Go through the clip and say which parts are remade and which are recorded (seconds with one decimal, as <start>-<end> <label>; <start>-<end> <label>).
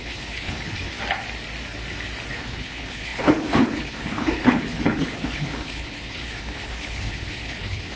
0.0-0.9 remade; 0.9-2.3 recorded; 2.3-8.0 remade